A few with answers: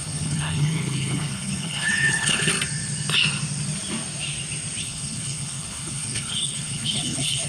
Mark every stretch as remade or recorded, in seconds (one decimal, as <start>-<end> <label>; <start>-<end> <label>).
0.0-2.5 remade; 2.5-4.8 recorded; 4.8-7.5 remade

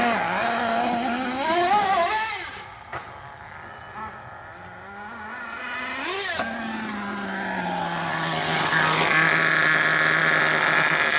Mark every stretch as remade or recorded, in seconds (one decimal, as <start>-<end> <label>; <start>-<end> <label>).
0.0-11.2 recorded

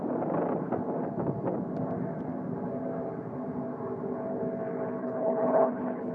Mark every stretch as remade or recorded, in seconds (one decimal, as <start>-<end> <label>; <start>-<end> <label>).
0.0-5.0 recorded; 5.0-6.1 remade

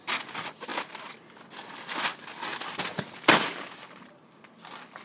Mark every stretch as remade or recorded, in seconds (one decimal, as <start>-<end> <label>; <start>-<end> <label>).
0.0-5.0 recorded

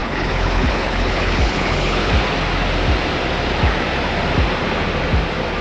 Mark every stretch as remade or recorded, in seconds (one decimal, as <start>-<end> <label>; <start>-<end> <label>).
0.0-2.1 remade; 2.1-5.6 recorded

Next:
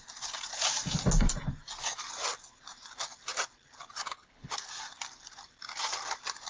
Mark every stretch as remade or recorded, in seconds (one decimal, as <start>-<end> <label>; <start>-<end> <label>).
0.0-4.0 recorded; 4.0-4.7 remade; 4.7-6.5 recorded

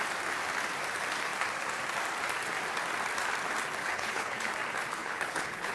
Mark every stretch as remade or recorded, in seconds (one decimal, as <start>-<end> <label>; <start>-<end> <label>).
0.0-3.8 recorded; 3.8-4.5 remade; 4.5-5.0 recorded; 5.0-5.7 remade

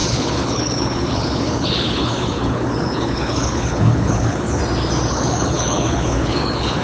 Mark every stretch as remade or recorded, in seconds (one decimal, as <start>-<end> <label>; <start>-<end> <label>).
0.0-4.6 remade; 4.6-5.1 recorded; 5.1-6.8 remade